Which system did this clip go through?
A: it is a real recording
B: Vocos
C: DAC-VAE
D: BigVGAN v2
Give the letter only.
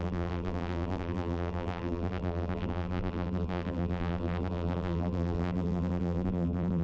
D